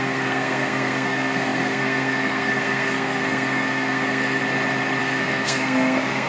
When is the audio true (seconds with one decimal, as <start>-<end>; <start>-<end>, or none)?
4.4-5.0